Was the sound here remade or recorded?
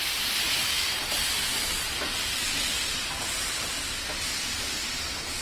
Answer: recorded